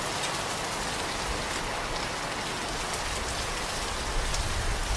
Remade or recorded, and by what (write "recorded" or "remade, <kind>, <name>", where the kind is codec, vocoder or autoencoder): recorded